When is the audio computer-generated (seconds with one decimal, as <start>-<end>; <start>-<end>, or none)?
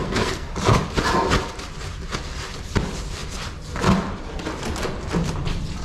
0.0-0.5